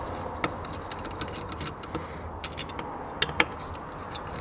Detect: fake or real real